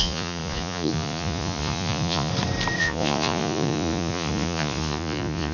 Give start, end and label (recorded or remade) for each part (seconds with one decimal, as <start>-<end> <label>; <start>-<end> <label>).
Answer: 0.0-2.3 remade; 2.3-2.8 recorded; 2.8-5.5 remade